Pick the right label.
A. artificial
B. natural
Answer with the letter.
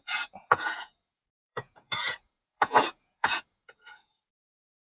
A